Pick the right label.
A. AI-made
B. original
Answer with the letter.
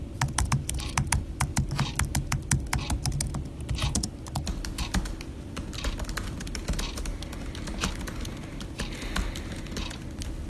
B